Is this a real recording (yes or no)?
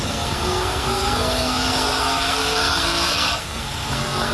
no